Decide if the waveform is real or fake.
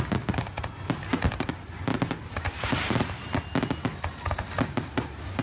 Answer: real